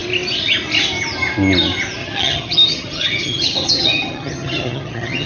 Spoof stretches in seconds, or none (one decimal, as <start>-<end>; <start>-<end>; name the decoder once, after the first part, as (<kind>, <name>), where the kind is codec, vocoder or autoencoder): 2.0-5.3 (vocoder, HiFi-GAN)